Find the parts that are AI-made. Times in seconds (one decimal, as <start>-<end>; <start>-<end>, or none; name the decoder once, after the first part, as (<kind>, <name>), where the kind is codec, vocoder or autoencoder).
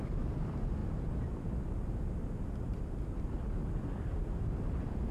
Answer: 0.8-1.7 (vocoder, BigVGAN v2); 2.2-2.7